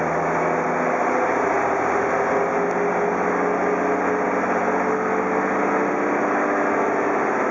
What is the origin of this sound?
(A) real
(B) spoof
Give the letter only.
A